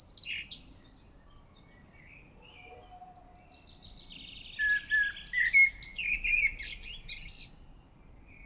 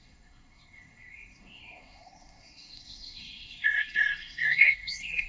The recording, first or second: first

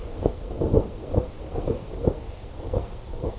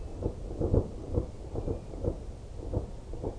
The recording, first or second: second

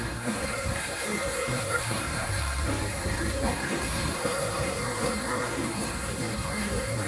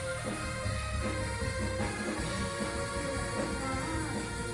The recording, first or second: second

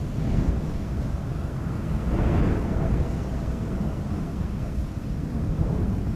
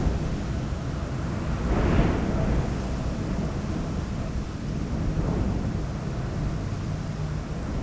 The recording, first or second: second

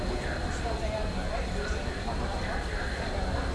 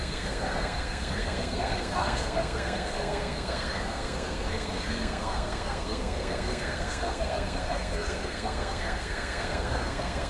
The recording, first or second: first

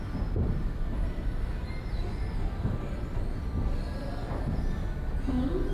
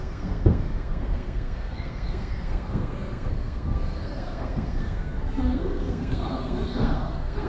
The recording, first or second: first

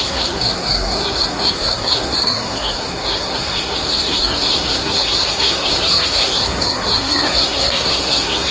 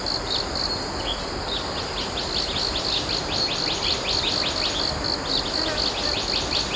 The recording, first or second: second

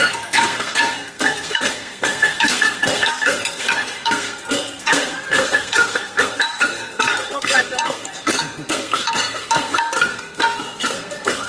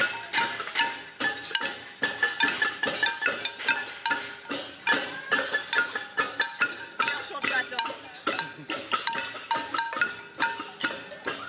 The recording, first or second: second